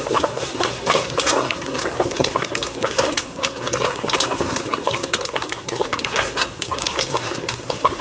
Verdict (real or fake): fake